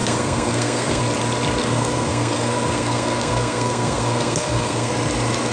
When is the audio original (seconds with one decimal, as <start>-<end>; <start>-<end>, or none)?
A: 1.0-1.6; 4.9-5.5

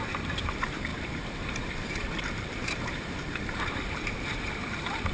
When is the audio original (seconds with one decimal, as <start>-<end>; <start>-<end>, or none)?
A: none

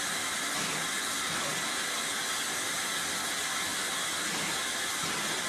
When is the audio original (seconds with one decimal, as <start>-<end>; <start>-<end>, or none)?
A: 0.0-5.5

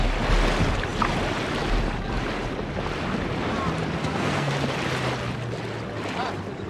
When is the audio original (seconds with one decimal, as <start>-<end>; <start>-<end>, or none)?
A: 0.0-4.0; 4.5-6.7

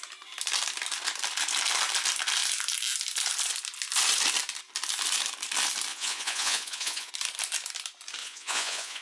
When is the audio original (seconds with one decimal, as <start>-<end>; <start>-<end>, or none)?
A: 0.0-5.9; 7.1-8.2

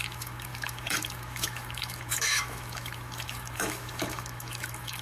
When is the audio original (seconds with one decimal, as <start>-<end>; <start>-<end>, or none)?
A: none